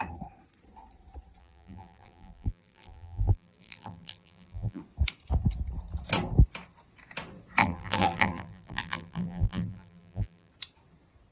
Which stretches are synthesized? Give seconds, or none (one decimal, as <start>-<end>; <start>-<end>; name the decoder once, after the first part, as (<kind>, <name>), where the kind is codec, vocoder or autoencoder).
1.4-4.8 (vocoder, BigVGAN v2); 7.6-10.5